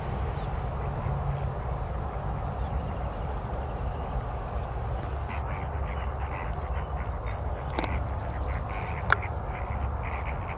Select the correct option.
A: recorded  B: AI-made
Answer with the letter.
A